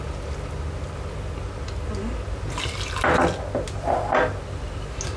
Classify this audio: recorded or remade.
recorded